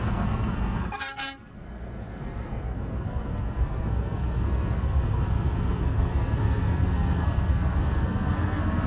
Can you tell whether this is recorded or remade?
remade